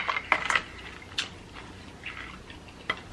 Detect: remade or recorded recorded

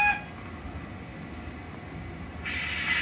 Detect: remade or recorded recorded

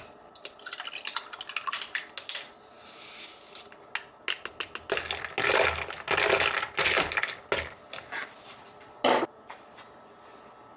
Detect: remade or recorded recorded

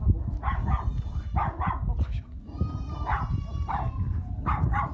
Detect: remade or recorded recorded